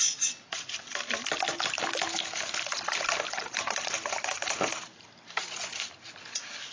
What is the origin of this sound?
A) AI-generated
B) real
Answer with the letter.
B